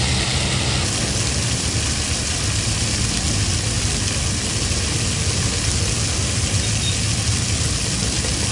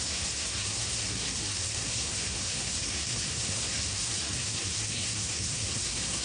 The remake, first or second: second